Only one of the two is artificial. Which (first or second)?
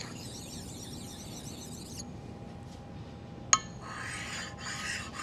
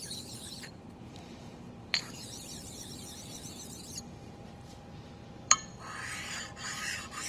second